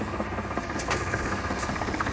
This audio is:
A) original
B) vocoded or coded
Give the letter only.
B